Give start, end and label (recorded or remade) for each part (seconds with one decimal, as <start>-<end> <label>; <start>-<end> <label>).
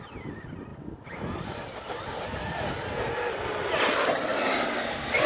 0.0-5.3 recorded